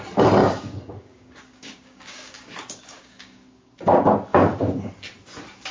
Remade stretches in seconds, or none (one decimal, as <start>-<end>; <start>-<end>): 0.4-3.8; 4.3-4.9